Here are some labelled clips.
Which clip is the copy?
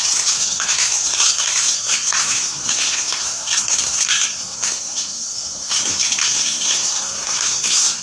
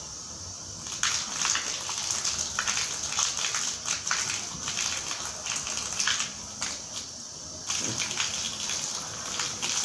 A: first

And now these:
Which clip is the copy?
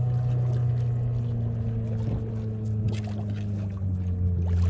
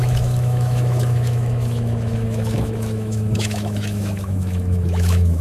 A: second